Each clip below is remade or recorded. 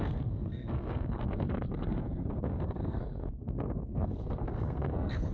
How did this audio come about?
remade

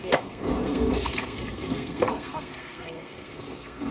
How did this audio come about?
remade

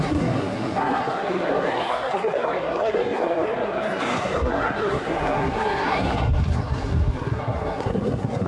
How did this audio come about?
remade